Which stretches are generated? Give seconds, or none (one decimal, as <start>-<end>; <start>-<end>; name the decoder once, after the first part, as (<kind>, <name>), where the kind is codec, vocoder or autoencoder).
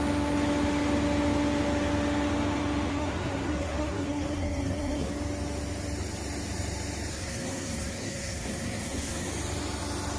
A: 2.9-5.1 (codec, SNAC); 7.1-9.3